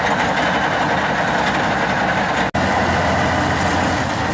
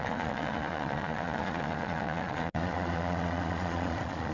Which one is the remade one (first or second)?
second